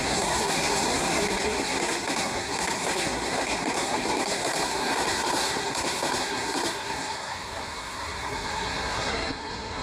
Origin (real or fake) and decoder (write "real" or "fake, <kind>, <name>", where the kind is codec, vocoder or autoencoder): fake, codec, SNAC